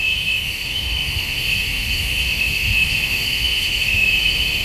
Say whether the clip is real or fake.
fake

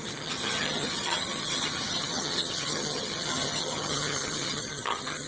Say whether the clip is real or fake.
fake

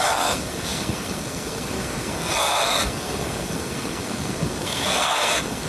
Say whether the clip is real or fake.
fake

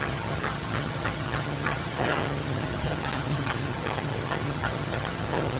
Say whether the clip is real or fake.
fake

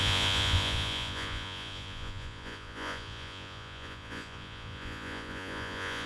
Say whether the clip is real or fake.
fake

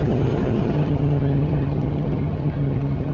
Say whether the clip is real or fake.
fake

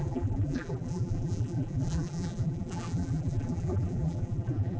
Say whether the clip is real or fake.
fake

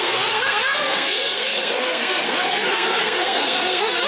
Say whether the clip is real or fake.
fake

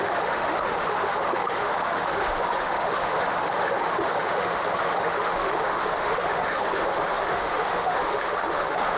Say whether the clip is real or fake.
fake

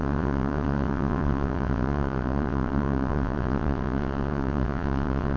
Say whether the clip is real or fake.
fake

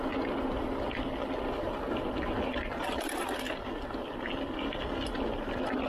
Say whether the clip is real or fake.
real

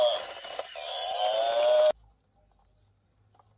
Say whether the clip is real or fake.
real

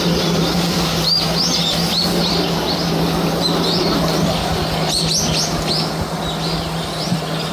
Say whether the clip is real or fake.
real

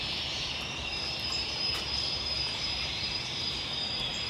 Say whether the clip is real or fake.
fake